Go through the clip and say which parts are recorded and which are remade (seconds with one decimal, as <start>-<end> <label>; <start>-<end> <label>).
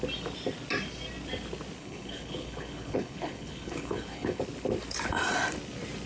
0.0-1.8 recorded; 1.8-4.4 remade; 4.4-6.1 recorded